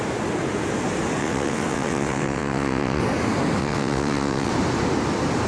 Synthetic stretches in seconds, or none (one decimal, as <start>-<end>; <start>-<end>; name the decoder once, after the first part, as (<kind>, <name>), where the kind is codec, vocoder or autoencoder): 1.2-3.0 (vocoder, WaveNeXt); 3.6-4.5